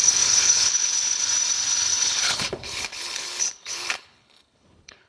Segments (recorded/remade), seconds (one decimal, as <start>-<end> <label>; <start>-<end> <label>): 0.0-1.2 remade; 1.2-1.9 recorded; 1.9-5.1 remade